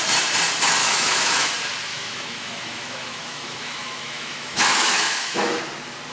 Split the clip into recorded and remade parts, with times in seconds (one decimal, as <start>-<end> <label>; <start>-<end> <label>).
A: 0.0-0.8 recorded; 0.8-1.5 remade; 1.5-1.9 recorded; 1.9-5.6 remade; 5.6-6.1 recorded